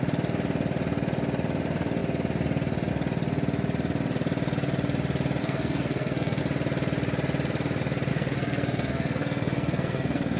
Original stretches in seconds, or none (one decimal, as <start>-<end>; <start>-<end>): 0.0-5.4; 6.4-8.1